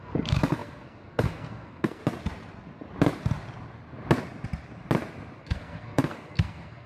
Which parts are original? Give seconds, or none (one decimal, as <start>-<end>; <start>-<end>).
2.0-5.4